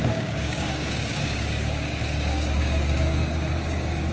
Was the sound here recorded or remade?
remade